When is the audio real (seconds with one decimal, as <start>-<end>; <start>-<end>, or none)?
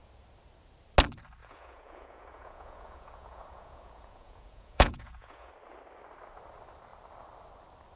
0.0-1.4; 5.5-8.0